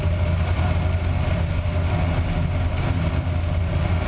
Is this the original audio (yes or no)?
yes